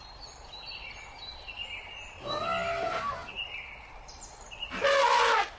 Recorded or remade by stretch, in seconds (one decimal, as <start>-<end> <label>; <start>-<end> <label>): 0.0-5.6 recorded